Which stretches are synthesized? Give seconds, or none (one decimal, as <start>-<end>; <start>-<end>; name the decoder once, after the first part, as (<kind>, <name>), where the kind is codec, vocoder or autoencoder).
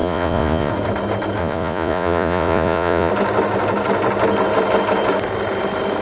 0.0-0.7 (vocoder, Vocos); 1.4-3.1